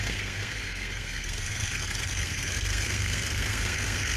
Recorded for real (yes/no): no